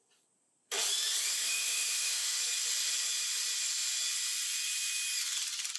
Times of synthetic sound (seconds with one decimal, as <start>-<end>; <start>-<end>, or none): 1.3-2.4